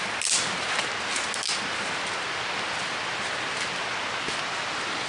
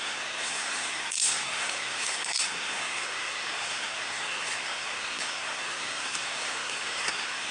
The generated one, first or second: second